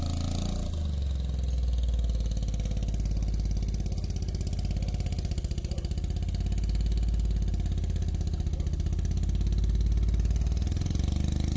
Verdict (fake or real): real